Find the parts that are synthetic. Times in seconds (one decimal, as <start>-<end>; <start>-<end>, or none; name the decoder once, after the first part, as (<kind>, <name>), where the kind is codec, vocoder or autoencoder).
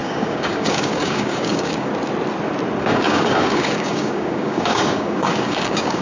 0.0-1.9 (codec, DAC); 2.8-6.0